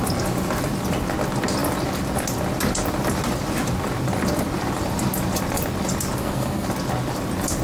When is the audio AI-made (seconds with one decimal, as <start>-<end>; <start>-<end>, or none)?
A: 6.2-6.7